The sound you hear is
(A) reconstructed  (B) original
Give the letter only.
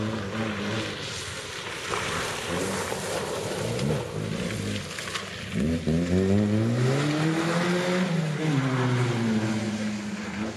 B